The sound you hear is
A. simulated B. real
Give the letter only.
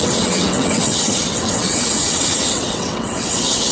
A